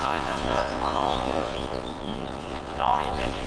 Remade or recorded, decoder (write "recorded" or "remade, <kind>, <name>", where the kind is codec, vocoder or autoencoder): remade, vocoder, Vocos